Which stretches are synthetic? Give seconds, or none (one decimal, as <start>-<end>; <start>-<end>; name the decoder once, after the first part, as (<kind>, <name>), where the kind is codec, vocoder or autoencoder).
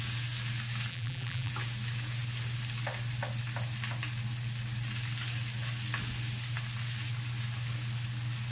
0.9-1.5 (vocoder, BigVGAN v2)